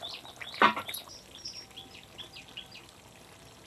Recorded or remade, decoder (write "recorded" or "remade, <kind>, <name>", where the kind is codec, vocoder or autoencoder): recorded